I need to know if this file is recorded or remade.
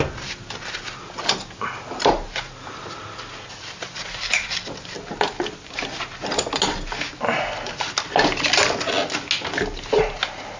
recorded